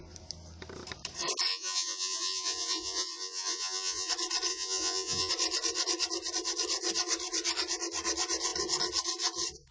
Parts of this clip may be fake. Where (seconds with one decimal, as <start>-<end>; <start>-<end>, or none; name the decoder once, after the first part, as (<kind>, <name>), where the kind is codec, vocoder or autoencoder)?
1.5-4.1 (vocoder, Vocos); 4.5-5.3